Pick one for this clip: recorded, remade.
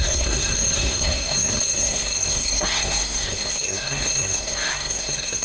remade